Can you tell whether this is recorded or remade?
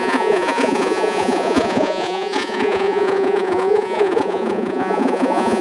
remade